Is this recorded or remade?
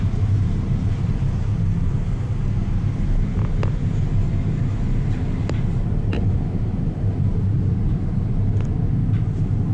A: recorded